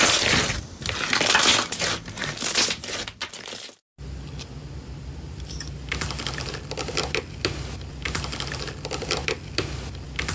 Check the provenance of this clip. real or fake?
real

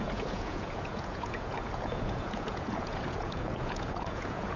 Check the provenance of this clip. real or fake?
fake